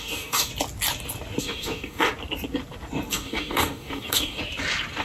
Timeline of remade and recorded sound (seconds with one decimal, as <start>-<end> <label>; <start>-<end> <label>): 0.0-0.5 remade; 0.5-1.4 recorded; 1.4-2.1 remade; 2.1-3.1 recorded; 3.1-4.4 remade; 4.4-5.0 recorded